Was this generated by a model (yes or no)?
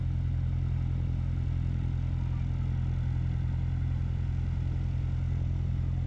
no